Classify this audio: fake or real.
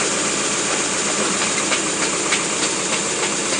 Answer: fake